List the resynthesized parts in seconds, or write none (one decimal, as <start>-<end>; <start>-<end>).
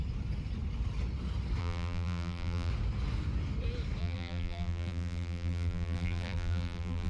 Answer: 1.6-2.7; 4.0-7.1